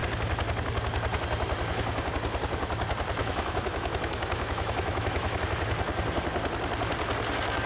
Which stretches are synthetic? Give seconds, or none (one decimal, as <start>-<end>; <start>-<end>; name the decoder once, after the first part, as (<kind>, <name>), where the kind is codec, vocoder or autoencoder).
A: 3.2-5.4 (autoencoder, DAC-VAE)